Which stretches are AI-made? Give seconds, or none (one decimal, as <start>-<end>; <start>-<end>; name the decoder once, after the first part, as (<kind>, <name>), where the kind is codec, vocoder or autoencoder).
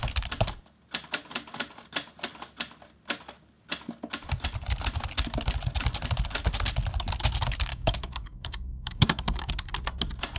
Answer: 7.7-9.5 (codec, DAC)